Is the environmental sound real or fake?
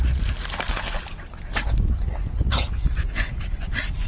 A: real